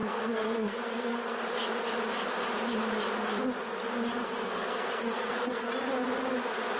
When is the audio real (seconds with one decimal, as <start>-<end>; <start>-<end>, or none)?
1.4-4.2; 5.7-6.8